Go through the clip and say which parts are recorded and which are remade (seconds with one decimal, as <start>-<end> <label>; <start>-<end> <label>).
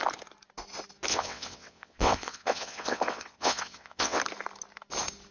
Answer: 0.0-1.1 recorded; 1.1-4.2 remade; 4.2-5.3 recorded